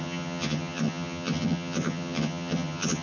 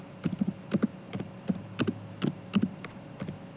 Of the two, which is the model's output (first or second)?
first